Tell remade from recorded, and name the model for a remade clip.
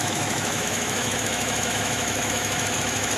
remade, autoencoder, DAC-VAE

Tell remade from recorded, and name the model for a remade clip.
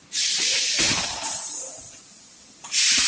remade, vocoder, BigVGAN v2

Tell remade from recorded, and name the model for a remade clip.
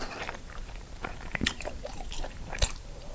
remade, vocoder, BigVGAN v2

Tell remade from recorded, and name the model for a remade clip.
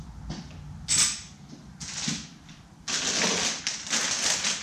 recorded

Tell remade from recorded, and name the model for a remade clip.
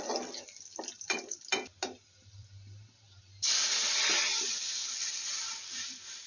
recorded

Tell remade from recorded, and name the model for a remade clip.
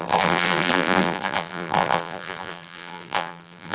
remade, vocoder, BigVGAN v2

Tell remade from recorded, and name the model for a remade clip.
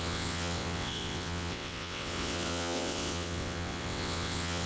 remade, vocoder, WaveNeXt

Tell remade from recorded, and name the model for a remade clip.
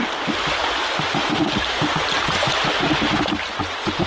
recorded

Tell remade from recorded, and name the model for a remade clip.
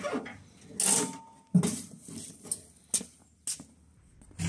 recorded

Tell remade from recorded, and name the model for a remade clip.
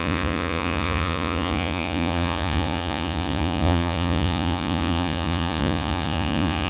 remade, vocoder, Vocos